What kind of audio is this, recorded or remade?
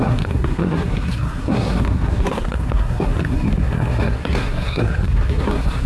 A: remade